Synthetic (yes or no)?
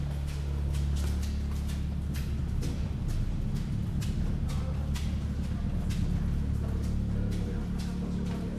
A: no